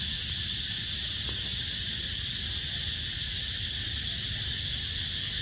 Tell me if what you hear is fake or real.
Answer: real